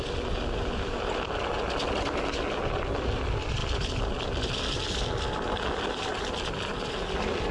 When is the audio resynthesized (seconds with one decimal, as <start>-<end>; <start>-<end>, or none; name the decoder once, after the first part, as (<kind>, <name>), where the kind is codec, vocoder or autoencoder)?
none